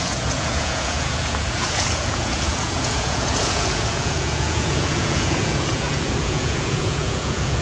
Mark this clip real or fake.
fake